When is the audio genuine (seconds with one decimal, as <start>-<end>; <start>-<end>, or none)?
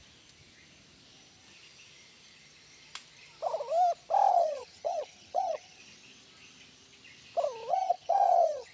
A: 0.0-4.3; 5.8-7.7